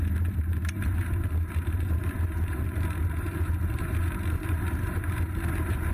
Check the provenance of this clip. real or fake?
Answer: fake